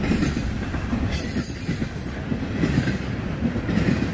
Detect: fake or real real